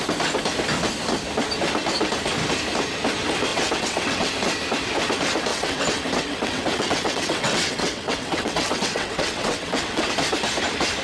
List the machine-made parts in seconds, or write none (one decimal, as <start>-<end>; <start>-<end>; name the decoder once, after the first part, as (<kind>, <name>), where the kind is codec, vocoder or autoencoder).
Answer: 3.5-4.3 (vocoder, WaveNeXt); 5.5-10.1